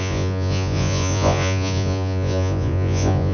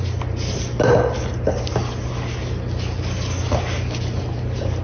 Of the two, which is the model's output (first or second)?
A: first